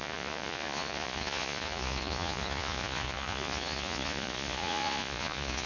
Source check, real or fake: fake